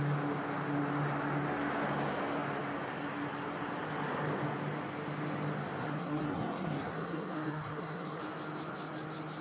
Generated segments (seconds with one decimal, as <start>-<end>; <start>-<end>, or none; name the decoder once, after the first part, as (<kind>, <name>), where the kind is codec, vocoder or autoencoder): 5.8-8.2 (codec, SNAC)